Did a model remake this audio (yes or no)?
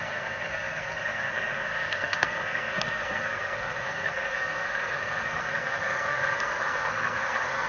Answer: yes